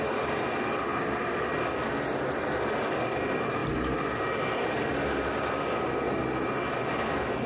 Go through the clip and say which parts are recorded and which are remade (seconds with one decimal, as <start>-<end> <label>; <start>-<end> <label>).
0.0-7.5 recorded